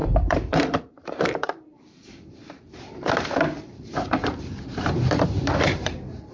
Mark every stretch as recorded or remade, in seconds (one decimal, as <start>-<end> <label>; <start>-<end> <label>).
0.0-6.3 remade